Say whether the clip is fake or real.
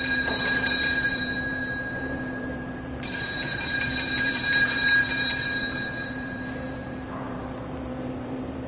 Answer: fake